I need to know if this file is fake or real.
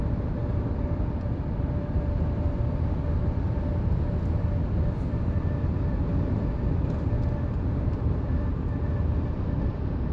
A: real